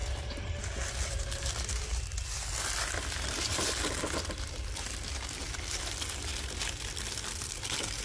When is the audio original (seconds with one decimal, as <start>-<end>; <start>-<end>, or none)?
0.0-8.0